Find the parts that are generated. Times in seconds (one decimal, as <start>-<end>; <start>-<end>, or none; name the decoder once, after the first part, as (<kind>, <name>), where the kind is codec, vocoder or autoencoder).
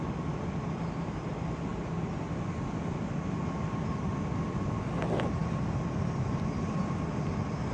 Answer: 5.4-6.8 (vocoder, BigVGAN v2)